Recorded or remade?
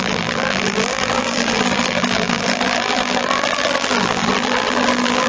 remade